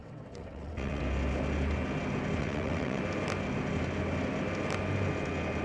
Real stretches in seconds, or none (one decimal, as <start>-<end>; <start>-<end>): 1.0-2.4; 3.0-5.6